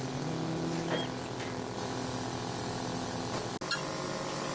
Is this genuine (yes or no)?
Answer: yes